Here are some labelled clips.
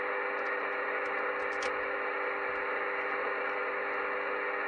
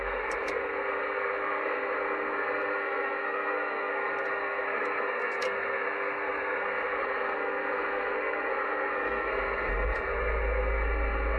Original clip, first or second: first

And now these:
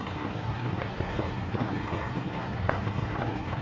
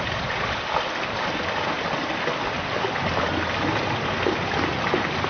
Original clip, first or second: second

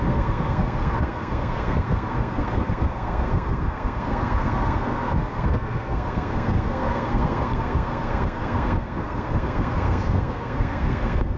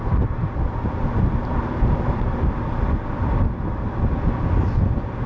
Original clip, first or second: second